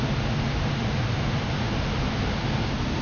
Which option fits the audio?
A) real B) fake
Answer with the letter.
A